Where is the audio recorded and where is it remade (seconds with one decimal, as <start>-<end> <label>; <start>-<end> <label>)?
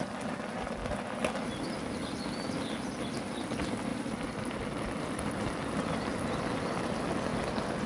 0.0-3.9 recorded; 3.9-6.4 remade; 6.4-7.9 recorded